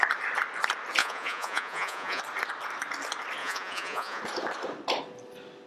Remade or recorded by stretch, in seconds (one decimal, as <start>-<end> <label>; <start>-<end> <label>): 0.0-1.0 recorded; 1.0-2.2 remade; 2.2-3.4 recorded; 3.4-4.2 remade; 4.2-5.7 recorded